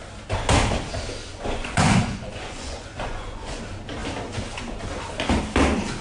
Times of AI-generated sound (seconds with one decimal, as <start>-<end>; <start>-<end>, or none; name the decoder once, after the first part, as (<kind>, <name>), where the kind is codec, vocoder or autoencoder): 1.2-3.6 (vocoder, Vocos)